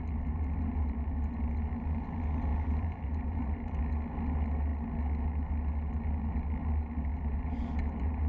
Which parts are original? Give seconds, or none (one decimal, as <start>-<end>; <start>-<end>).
0.0-2.5; 3.4-7.1